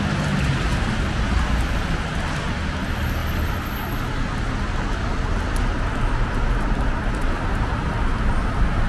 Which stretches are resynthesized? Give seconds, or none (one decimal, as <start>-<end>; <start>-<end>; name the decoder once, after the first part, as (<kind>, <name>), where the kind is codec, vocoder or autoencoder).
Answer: none